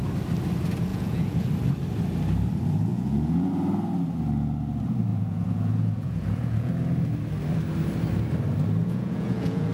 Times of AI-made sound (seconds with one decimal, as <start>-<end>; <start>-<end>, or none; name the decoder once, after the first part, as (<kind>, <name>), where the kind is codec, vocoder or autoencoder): 0.9-1.5 (vocoder, Vocos); 2.9-3.5; 5.1-6.7; 8.8-9.7